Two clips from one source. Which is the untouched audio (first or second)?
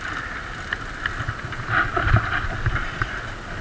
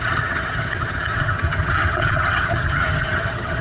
first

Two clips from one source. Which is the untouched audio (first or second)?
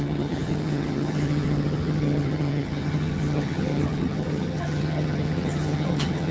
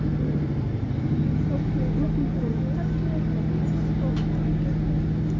second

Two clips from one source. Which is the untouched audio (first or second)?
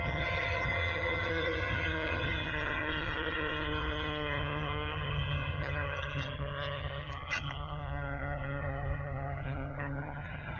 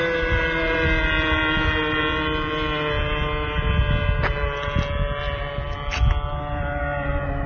second